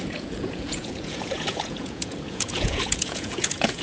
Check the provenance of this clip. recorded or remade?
remade